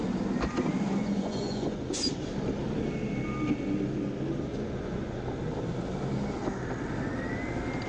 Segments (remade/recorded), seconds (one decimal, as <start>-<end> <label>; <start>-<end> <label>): 0.0-1.0 recorded; 1.0-2.1 remade; 2.1-4.5 recorded; 4.5-5.2 remade; 5.2-7.9 recorded